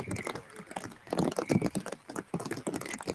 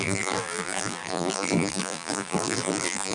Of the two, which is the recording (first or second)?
first